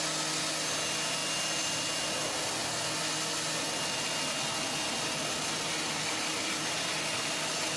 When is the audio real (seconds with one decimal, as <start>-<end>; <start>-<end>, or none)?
0.0-7.8